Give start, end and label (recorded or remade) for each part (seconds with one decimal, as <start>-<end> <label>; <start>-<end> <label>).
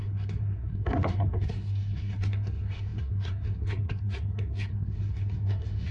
0.0-5.9 remade